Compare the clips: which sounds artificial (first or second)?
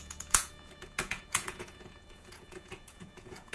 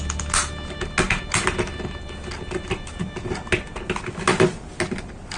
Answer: first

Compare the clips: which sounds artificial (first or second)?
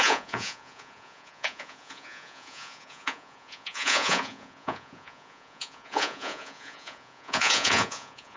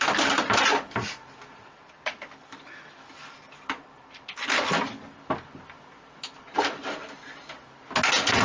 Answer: first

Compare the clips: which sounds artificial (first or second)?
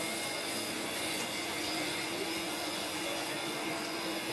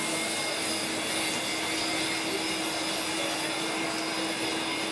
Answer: first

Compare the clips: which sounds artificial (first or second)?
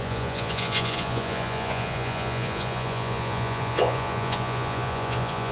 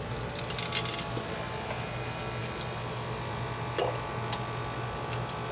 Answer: first